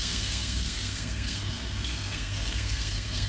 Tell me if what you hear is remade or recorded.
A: remade